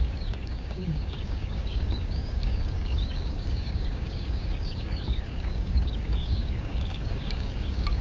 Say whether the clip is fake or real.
fake